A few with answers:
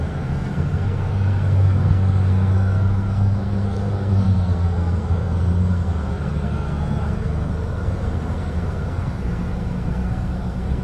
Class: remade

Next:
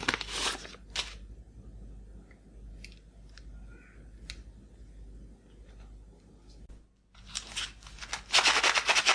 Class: recorded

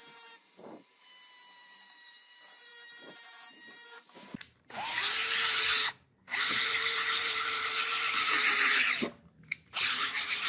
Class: remade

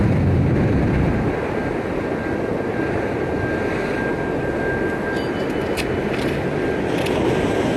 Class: recorded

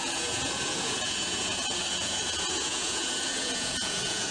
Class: remade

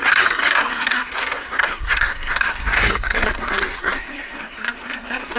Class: remade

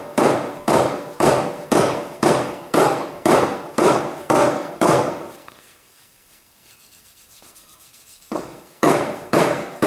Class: remade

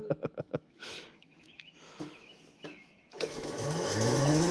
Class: remade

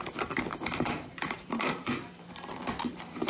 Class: remade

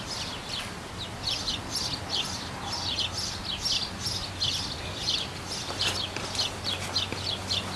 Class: recorded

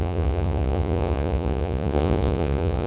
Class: remade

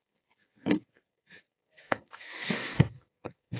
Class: remade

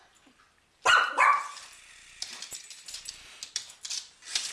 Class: recorded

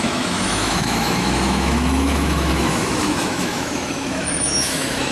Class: remade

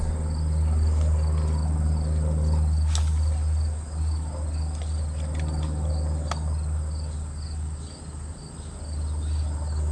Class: recorded